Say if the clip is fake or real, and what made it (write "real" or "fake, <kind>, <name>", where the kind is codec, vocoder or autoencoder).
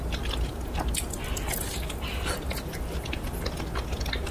real